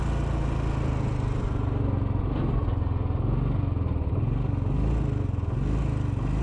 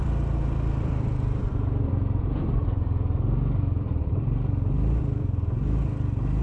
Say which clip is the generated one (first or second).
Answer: second